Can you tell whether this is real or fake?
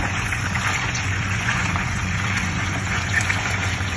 fake